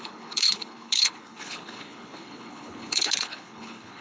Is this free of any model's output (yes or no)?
no